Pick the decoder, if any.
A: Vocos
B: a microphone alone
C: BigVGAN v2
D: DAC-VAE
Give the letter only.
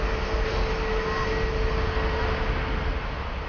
B